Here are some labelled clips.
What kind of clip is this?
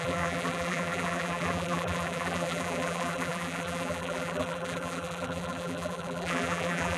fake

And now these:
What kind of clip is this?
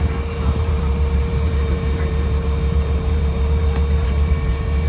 fake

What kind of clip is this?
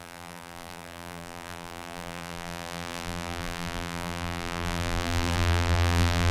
fake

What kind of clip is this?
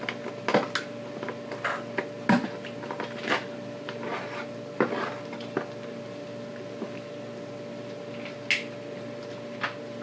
real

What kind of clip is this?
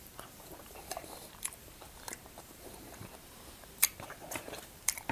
fake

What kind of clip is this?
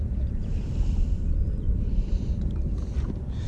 fake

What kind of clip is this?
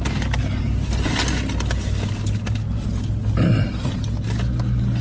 real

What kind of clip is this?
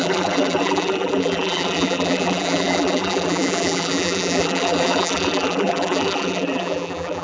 fake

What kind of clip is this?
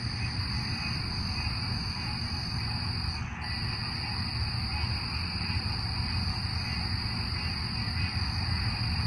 real